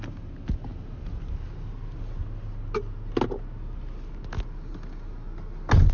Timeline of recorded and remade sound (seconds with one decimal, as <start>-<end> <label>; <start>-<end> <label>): 0.0-0.7 recorded; 0.7-1.3 remade; 1.3-5.9 recorded

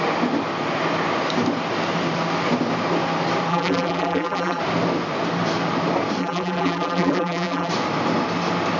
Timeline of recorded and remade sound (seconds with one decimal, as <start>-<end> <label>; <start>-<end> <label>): 0.0-3.5 recorded; 3.5-4.6 remade; 4.6-6.2 recorded; 6.2-7.7 remade; 7.7-8.8 recorded

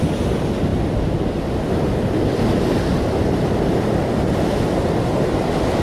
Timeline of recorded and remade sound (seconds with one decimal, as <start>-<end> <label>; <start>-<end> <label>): 0.0-0.7 recorded; 0.7-4.1 remade; 4.1-5.8 recorded

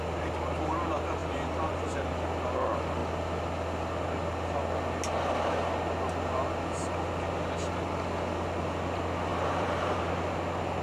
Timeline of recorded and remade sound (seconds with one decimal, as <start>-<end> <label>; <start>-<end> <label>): 0.0-1.2 recorded; 1.2-2.1 remade; 2.1-9.3 recorded; 9.3-10.0 remade; 10.0-10.8 recorded